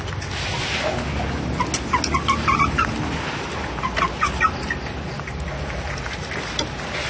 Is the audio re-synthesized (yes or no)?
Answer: no